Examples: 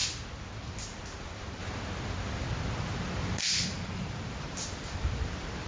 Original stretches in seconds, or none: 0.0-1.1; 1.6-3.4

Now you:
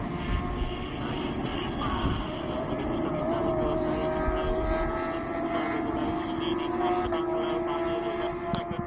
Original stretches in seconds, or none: 0.0-1.5; 3.2-8.9

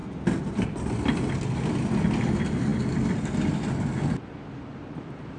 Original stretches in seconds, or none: 0.0-5.4

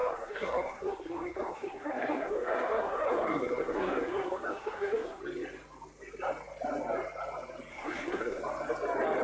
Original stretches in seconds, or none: 5.2-7.7; 8.4-9.2

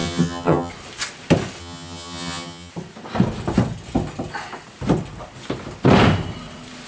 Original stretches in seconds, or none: 0.7-1.6; 2.7-6.9

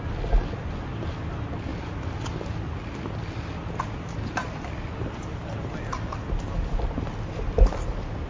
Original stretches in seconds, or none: 0.0-8.3

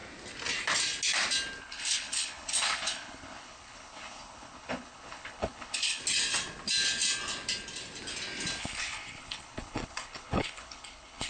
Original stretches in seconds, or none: 0.0-1.6; 6.0-8.6